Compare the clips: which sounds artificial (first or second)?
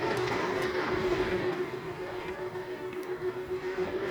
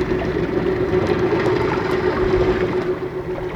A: first